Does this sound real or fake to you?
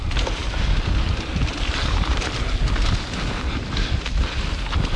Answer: real